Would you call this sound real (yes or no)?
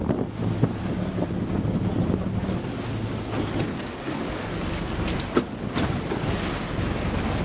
yes